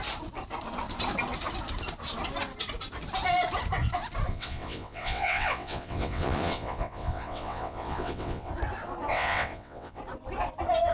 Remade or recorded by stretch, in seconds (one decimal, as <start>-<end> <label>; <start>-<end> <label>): 0.0-4.3 recorded; 4.3-8.5 remade; 8.5-9.1 recorded; 9.1-10.0 remade; 10.0-10.9 recorded